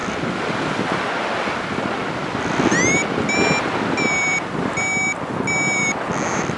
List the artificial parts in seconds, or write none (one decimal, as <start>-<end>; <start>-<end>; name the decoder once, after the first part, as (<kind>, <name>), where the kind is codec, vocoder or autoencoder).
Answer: none